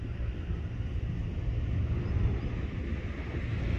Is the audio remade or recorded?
recorded